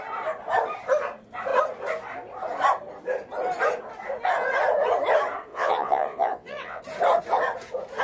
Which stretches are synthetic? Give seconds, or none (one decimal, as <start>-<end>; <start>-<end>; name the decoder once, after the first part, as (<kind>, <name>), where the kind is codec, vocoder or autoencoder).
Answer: 5.5-6.8 (vocoder, WaveNeXt)